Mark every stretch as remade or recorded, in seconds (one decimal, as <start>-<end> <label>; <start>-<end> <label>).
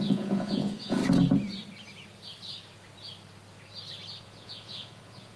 0.0-1.0 remade; 1.0-4.2 recorded; 4.2-5.4 remade